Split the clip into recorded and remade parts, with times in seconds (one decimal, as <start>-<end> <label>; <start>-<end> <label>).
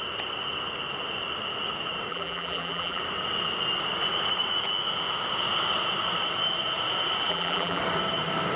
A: 0.0-2.1 recorded; 2.1-3.0 remade; 3.0-7.3 recorded; 7.3-7.8 remade; 7.8-8.6 recorded